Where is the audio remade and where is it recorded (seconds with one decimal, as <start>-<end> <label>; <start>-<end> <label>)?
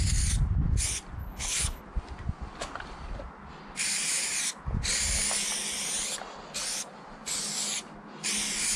0.0-1.2 recorded; 1.2-1.8 remade; 1.8-8.8 recorded